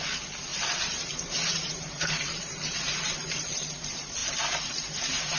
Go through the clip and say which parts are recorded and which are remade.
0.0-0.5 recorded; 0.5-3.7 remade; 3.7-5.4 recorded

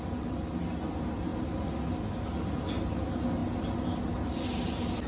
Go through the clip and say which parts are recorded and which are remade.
0.0-5.1 recorded

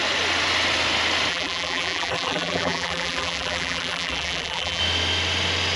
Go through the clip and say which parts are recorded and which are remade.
0.0-1.3 recorded; 1.3-4.8 remade; 4.8-5.8 recorded

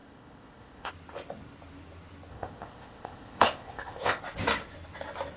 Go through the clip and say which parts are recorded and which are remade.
0.0-0.9 remade; 0.9-2.3 recorded; 2.3-4.2 remade; 4.2-5.4 recorded

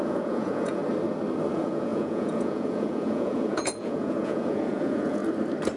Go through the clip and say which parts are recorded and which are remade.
0.0-0.8 remade; 0.8-1.5 recorded; 1.5-5.2 remade; 5.2-5.8 recorded

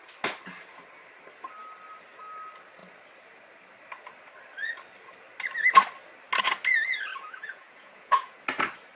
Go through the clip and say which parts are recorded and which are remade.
0.0-7.1 recorded; 7.1-8.4 remade; 8.4-9.0 recorded

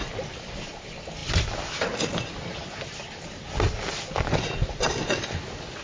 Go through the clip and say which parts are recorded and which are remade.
0.0-5.8 recorded

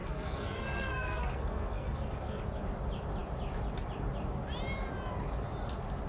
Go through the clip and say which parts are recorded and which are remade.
0.0-2.4 remade; 2.4-6.1 recorded